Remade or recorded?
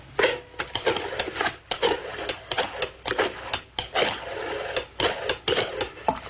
recorded